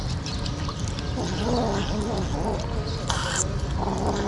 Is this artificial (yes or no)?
no